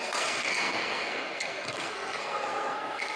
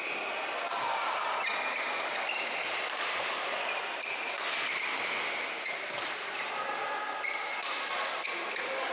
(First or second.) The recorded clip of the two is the second